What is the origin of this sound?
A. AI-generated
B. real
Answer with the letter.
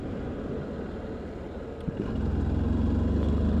B